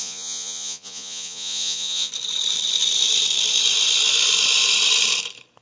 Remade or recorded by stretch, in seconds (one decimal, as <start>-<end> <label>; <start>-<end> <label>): 0.0-2.1 remade; 2.1-5.6 recorded

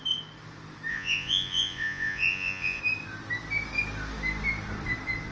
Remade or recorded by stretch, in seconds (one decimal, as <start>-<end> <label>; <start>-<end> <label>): 0.0-0.9 recorded; 0.9-2.8 remade; 2.8-5.3 recorded

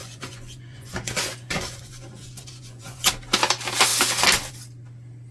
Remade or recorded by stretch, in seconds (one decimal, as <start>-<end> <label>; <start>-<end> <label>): 0.0-3.1 remade; 3.1-5.3 recorded